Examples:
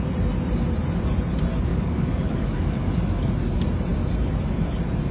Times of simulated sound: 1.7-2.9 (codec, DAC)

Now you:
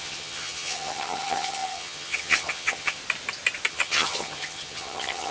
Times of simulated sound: 0.0-3.0 (vocoder, HiFi-GAN); 3.7-5.3

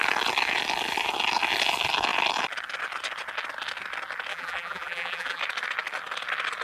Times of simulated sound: 4.3-5.4 (vocoder, BigVGAN v2)

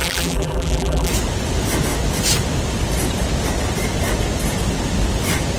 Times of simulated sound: 0.0-1.1 (vocoder, BigVGAN v2)